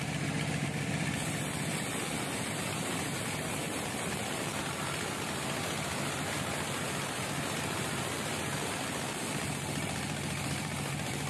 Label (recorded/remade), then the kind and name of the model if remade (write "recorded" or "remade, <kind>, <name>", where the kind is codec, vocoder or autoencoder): remade, vocoder, BigVGAN v2